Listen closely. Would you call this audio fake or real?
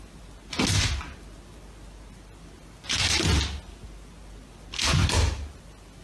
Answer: real